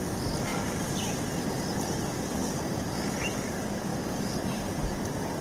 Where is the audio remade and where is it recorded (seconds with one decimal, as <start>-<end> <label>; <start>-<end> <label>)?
0.0-3.9 recorded; 3.9-4.6 remade; 4.6-5.4 recorded